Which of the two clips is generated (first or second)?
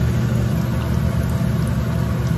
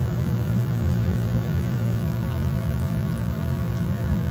second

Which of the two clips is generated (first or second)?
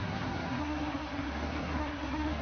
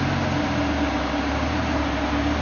first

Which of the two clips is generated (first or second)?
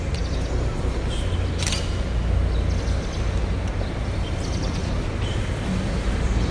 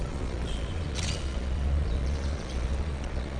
second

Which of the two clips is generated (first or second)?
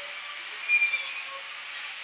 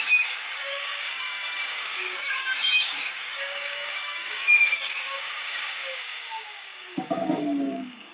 second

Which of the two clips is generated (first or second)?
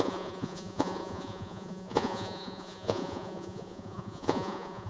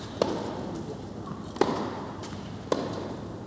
first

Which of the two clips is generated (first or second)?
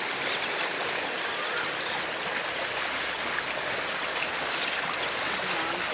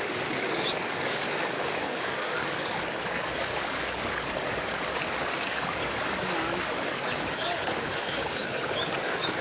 second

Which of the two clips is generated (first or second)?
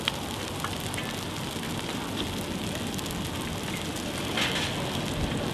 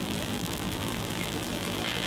second